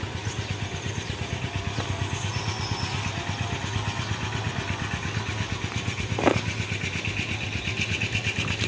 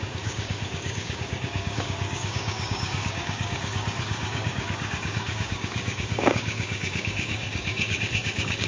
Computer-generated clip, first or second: second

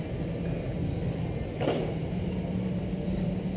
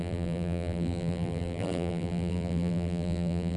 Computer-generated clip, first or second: second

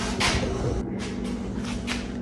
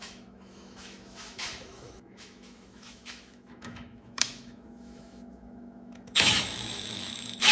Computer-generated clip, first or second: second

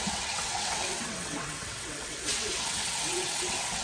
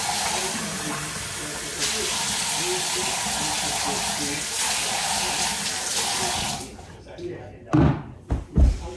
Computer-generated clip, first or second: first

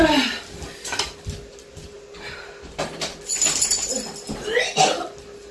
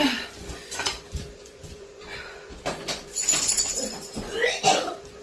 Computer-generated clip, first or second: second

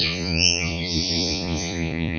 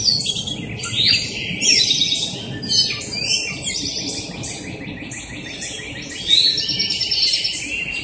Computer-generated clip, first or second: first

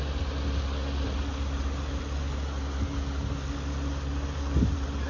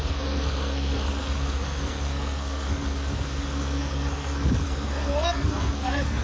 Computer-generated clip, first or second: second